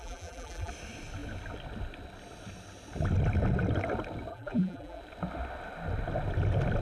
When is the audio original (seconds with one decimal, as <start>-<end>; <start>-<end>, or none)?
0.7-4.3; 5.0-6.8